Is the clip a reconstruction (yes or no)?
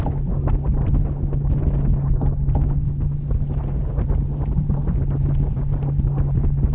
no